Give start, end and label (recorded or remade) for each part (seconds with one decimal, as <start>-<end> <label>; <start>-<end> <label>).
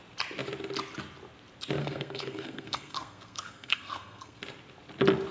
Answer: 0.0-1.8 recorded; 1.8-4.4 remade; 4.4-5.3 recorded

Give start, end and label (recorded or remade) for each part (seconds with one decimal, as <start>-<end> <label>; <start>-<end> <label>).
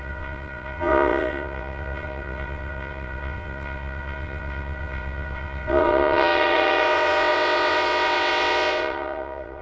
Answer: 0.0-9.6 remade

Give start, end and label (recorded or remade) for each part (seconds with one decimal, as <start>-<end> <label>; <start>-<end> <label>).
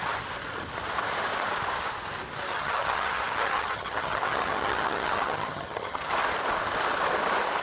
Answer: 0.0-2.5 recorded; 2.5-6.1 remade; 6.1-7.6 recorded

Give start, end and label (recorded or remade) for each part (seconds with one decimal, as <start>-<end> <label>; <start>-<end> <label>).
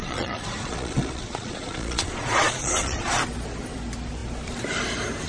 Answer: 0.0-3.2 remade; 3.2-5.3 recorded